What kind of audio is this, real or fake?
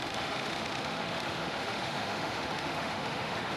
fake